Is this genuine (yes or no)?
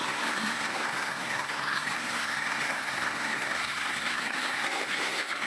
no